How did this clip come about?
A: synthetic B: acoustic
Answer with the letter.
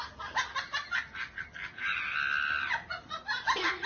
B